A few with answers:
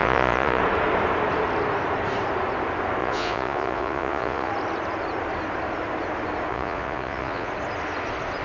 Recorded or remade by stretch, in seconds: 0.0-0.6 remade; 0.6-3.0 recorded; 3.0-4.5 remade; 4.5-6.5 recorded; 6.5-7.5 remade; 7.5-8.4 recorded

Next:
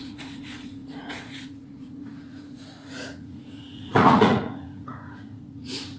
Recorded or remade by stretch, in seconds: 0.0-6.0 remade

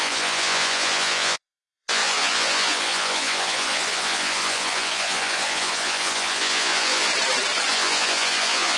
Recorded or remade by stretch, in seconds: 0.0-7.1 remade; 7.1-7.7 recorded; 7.7-8.8 remade

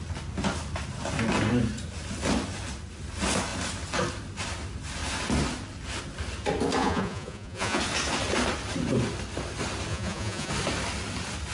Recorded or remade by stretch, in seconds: 0.0-6.8 recorded; 6.8-7.8 remade; 7.8-9.9 recorded; 9.9-10.5 remade; 10.5-11.5 recorded

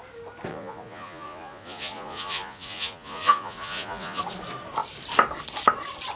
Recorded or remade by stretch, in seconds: 0.0-0.5 recorded; 0.5-4.2 remade; 4.2-6.2 recorded

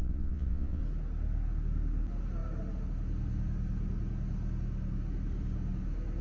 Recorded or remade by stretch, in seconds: 0.0-0.8 remade; 0.8-6.2 recorded